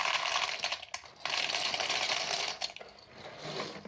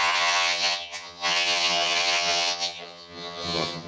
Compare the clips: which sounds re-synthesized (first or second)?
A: second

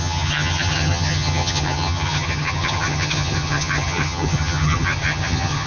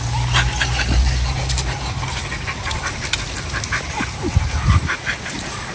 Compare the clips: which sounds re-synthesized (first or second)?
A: first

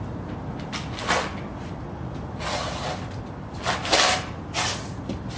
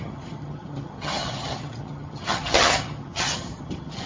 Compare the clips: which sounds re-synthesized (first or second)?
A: second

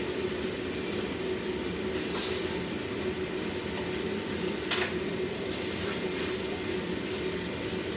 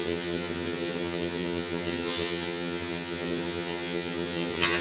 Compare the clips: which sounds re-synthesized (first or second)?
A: second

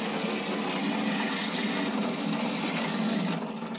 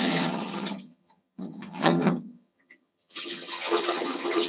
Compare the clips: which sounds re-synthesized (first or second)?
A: second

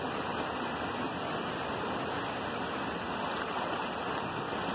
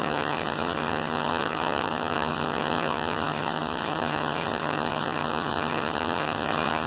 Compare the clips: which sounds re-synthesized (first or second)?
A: second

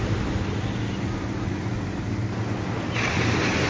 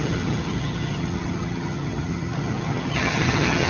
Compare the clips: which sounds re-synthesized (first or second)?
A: second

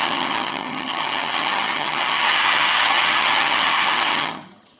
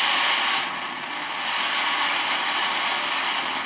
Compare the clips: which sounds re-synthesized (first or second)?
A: first